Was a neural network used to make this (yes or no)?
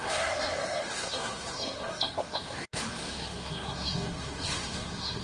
yes